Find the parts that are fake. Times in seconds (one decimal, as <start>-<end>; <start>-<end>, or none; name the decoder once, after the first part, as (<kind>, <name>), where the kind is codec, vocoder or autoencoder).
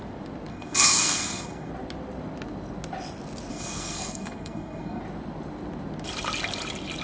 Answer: 0.5-1.7 (codec, SNAC); 3.5-5.0